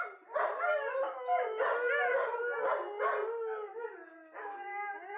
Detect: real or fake real